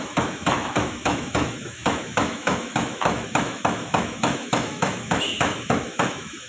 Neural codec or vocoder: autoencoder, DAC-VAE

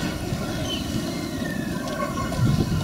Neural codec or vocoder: none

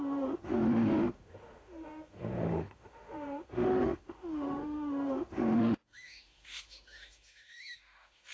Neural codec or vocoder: autoencoder, DAC-VAE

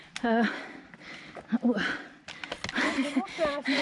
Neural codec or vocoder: none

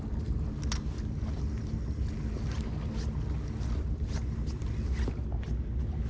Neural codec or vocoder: none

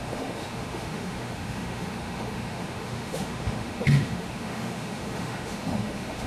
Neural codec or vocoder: autoencoder, DAC-VAE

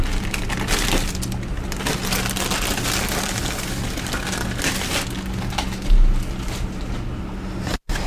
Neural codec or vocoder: none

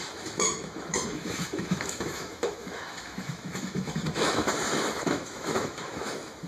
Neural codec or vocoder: autoencoder, DAC-VAE